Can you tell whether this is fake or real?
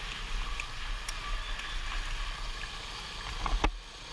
real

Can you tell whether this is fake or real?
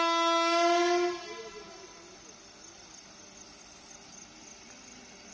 real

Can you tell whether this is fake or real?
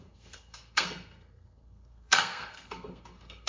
fake